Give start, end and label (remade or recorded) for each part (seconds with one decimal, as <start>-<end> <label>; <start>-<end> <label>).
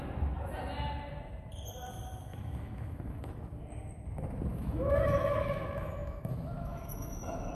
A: 0.0-2.3 recorded; 2.3-3.4 remade; 3.4-4.5 recorded; 4.5-7.5 remade